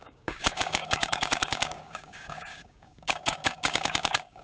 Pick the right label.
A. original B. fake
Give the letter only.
B